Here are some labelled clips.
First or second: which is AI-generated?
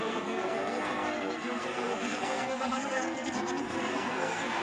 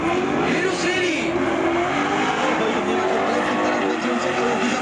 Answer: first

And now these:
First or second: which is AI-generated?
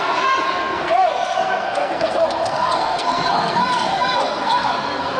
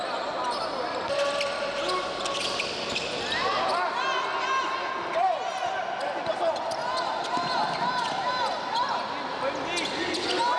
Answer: first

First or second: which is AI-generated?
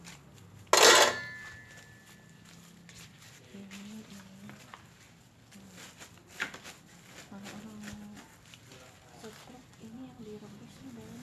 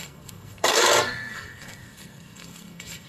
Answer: second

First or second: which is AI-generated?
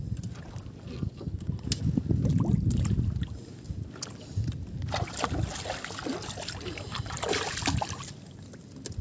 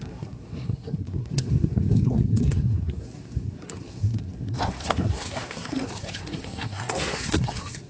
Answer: second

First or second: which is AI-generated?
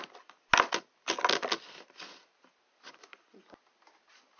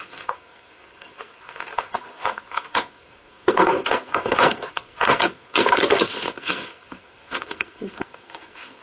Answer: second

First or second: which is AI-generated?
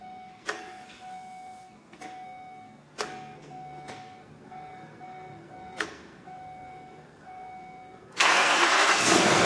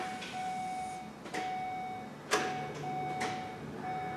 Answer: first